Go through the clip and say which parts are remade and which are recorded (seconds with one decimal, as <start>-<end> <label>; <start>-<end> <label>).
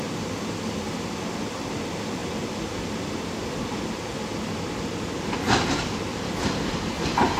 0.0-7.4 recorded